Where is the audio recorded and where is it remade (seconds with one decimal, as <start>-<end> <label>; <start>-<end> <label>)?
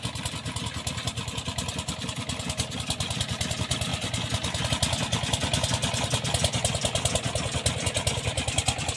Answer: 0.0-9.0 recorded